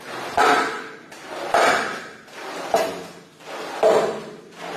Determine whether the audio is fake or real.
real